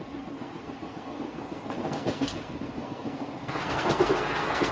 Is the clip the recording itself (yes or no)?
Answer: no